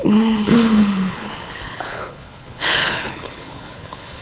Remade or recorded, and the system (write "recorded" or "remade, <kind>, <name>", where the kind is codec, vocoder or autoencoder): remade, codec, HILCodec